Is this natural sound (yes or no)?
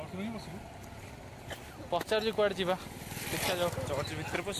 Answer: yes